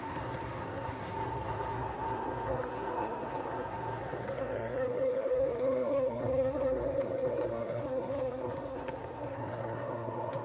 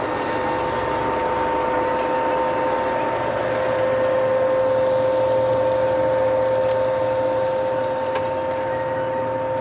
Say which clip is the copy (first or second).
first